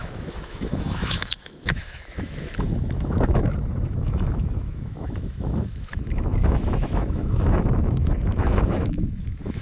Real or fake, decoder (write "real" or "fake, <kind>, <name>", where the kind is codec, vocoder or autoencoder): fake, autoencoder, DAC-VAE